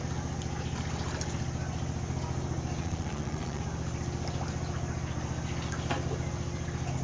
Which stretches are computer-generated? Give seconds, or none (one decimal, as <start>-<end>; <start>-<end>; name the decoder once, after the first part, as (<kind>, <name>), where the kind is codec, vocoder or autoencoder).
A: 2.8-3.6 (vocoder, Vocos)